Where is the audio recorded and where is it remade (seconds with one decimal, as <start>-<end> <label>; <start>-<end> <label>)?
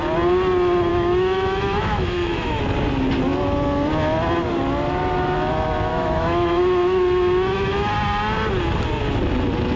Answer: 0.0-0.9 recorded; 0.9-2.6 remade; 2.6-5.9 recorded; 5.9-7.9 remade; 7.9-9.8 recorded